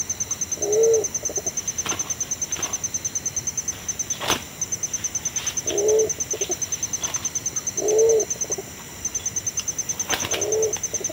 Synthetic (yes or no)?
no